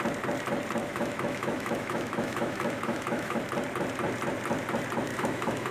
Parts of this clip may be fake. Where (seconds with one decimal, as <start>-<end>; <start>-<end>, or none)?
0.8-3.4; 5.1-5.7